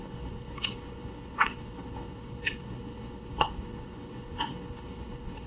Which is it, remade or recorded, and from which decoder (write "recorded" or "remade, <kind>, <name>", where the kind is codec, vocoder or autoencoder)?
remade, codec, HILCodec